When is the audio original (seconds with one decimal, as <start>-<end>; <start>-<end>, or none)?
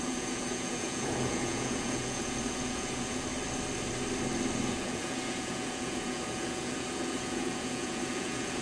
3.3-4.7